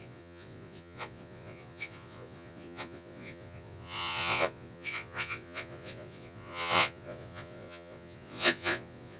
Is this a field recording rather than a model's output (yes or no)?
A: no